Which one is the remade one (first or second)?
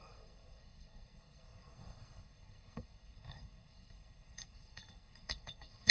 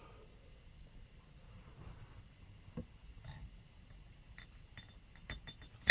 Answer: first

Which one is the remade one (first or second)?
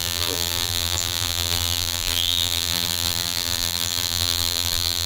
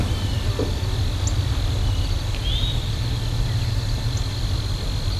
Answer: first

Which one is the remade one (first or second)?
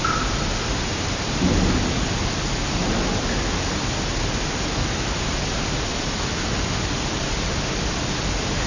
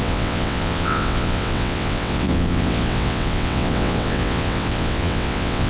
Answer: second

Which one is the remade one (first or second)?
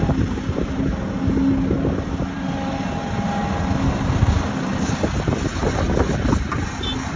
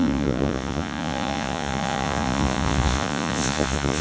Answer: second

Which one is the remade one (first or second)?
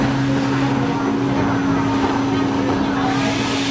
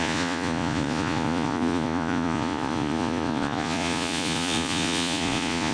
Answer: second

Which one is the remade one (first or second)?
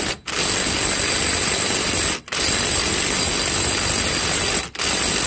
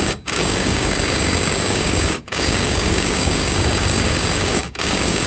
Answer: second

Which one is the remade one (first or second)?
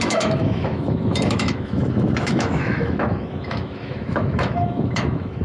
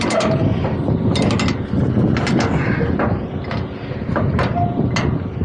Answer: first